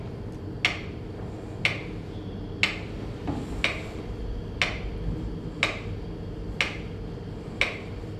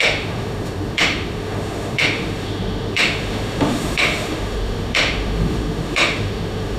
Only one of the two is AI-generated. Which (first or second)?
second